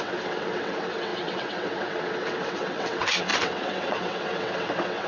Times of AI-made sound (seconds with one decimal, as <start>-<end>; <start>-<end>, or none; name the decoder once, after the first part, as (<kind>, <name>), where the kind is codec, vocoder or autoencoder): 0.0-5.1 (vocoder, WaveNeXt)